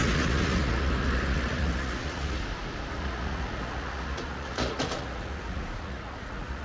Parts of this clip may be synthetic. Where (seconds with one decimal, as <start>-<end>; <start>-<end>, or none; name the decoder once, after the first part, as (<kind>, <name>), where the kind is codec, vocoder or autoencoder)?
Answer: 0.0-2.4 (vocoder, Vocos); 2.9-6.6